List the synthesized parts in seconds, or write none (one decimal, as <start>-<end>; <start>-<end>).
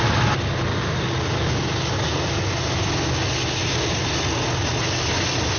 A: none